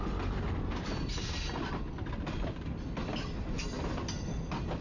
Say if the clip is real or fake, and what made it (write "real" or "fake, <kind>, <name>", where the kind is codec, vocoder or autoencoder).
real